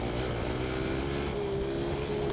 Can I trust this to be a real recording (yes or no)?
yes